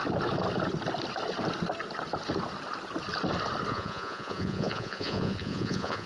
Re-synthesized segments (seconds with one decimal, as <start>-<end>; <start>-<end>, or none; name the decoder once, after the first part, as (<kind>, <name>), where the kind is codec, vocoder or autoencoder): 3.7-6.1 (vocoder, Vocos)